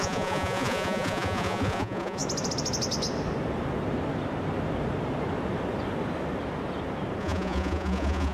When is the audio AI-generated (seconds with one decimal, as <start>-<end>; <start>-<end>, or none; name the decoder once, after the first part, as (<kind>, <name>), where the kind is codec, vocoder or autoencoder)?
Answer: 0.0-2.2 (vocoder, Vocos); 7.2-8.3